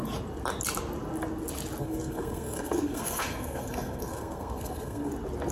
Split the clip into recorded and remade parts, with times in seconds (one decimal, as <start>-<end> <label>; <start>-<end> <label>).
0.0-1.8 recorded; 1.8-5.1 remade; 5.1-5.5 recorded